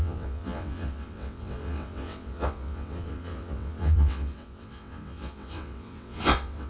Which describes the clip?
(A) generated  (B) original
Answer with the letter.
A